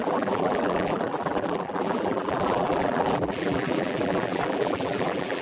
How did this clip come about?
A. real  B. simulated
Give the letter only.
B